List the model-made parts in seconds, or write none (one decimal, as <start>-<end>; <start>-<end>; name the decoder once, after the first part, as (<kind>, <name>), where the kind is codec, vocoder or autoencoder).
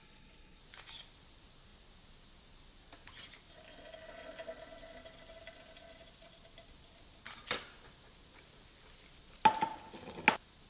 0.0-0.6 (codec, HILCodec)